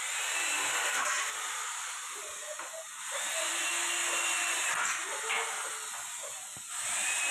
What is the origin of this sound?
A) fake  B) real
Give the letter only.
B